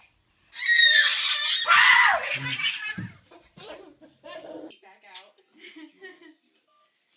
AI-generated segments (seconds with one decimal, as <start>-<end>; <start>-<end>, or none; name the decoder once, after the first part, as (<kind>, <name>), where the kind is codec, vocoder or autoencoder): none